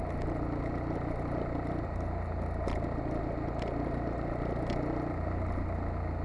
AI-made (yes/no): no